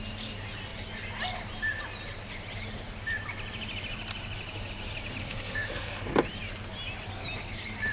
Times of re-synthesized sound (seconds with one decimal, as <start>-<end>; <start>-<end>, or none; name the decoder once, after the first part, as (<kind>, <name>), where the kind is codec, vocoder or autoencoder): 5.2-6.1 (codec, SNAC)